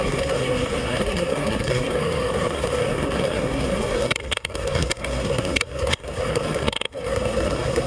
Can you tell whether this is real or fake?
fake